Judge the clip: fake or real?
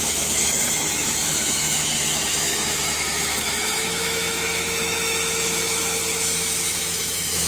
fake